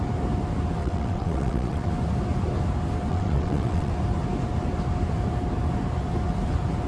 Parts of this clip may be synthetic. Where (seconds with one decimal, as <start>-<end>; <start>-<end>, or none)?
0.8-1.9; 3.1-3.9